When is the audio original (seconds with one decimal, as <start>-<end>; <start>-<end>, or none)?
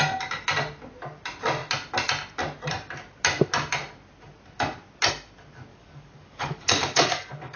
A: 0.0-5.7